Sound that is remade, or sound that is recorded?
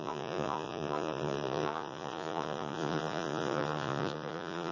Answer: remade